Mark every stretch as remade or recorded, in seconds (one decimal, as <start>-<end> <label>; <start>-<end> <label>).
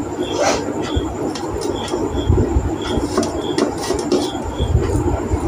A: 0.0-5.5 recorded